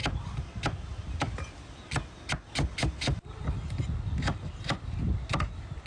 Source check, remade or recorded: recorded